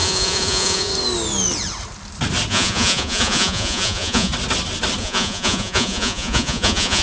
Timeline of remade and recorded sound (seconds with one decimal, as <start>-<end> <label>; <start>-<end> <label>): 0.0-0.9 remade; 0.9-2.5 recorded; 2.5-4.3 remade; 4.3-5.0 recorded; 5.0-7.0 remade